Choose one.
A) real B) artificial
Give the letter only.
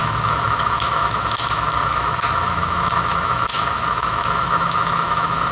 B